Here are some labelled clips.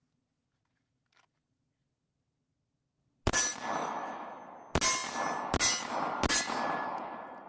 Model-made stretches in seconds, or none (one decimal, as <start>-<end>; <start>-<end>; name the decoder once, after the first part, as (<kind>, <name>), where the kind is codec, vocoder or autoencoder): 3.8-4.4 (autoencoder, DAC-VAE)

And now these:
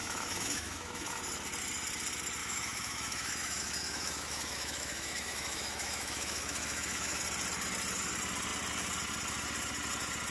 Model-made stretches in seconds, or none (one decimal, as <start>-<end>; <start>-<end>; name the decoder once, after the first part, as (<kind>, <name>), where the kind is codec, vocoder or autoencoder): 0.0-1.2 (autoencoder, DAC-VAE); 2.4-7.2

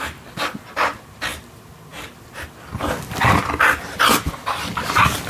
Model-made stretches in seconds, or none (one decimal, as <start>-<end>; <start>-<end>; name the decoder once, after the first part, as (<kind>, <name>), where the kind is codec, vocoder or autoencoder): none

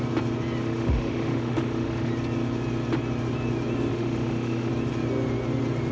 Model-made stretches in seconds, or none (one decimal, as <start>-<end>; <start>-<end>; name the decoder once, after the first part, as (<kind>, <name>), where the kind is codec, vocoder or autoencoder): 0.6-2.1 (autoencoder, DAC-VAE); 3.9-4.7